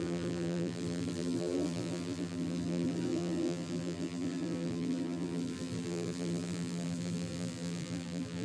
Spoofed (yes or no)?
yes